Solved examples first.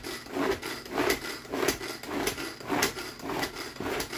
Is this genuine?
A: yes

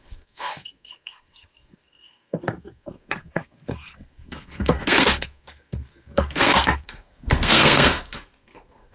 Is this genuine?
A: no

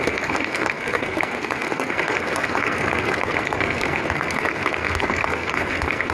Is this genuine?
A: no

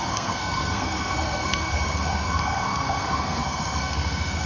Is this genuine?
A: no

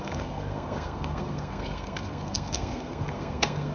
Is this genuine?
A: no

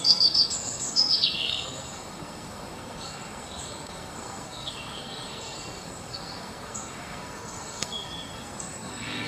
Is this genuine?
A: no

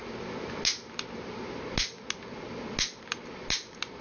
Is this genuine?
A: yes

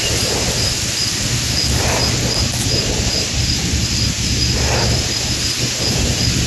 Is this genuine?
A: yes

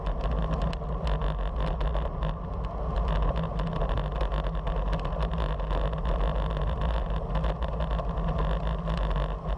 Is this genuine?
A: yes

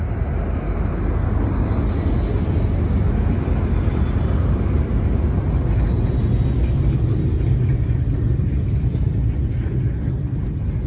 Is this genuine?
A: yes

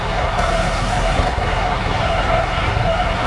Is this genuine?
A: no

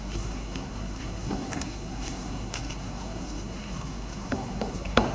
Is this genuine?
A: no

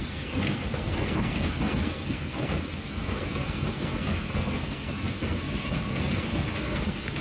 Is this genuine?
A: no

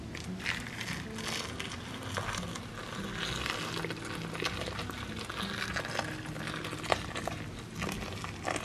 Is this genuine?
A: yes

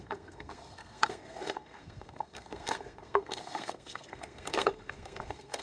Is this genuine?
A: no